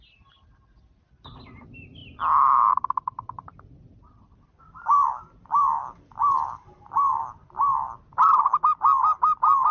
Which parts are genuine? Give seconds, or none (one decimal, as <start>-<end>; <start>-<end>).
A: 0.0-2.0; 4.6-5.4; 8.2-9.7